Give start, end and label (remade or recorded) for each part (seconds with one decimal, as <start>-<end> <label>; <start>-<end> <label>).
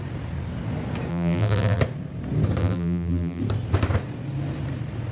0.0-1.1 recorded; 1.1-1.8 remade; 1.8-2.6 recorded; 2.6-3.4 remade; 3.4-5.1 recorded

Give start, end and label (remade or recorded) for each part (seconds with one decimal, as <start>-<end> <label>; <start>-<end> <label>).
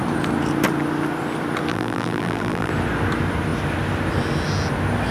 0.0-1.7 recorded; 1.7-2.7 remade; 2.7-5.1 recorded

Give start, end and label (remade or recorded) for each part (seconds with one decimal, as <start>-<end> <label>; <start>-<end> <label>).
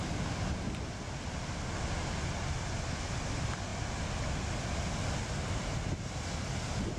0.0-7.0 recorded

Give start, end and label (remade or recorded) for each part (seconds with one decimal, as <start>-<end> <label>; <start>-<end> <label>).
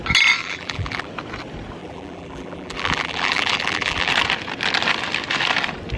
0.0-0.4 recorded; 0.4-1.1 remade; 1.1-1.8 recorded; 1.8-4.1 remade; 4.1-6.0 recorded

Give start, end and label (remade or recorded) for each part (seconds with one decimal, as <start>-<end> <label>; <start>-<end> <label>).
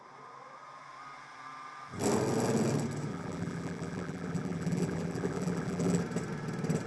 0.0-3.1 recorded; 3.1-6.0 remade; 6.0-6.9 recorded